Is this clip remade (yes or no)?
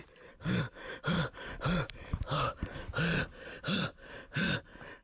no